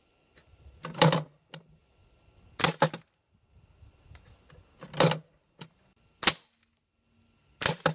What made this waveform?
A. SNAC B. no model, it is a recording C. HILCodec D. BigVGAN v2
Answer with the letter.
B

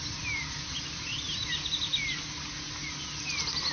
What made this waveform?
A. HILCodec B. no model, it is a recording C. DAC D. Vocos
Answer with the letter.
B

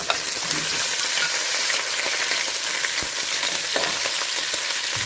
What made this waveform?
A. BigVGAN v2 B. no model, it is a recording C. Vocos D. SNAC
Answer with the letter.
B